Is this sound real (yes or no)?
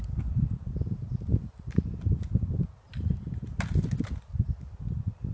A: yes